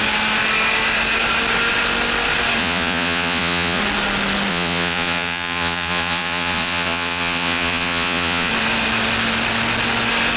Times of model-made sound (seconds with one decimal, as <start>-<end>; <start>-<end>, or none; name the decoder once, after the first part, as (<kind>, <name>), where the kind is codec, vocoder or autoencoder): 2.6-3.8 (vocoder, Vocos); 4.5-8.5